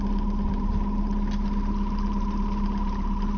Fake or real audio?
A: real